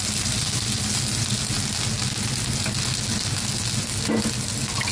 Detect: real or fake real